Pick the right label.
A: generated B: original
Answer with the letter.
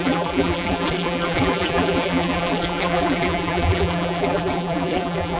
A